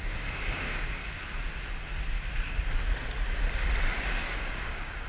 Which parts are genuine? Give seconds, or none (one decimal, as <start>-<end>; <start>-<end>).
1.0-4.0